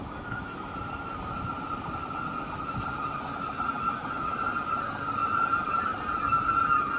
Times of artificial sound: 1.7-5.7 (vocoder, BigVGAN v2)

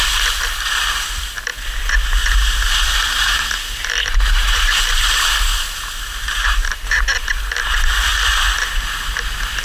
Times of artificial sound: 2.2-7.0 (vocoder, BigVGAN v2)